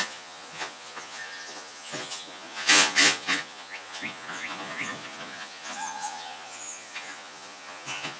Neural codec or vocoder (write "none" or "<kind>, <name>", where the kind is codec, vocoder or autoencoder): vocoder, Vocos